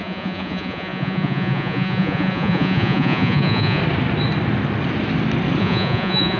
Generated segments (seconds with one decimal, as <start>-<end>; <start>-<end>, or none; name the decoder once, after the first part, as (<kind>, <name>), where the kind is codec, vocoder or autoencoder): 0.0-3.8 (vocoder, Vocos); 5.6-6.4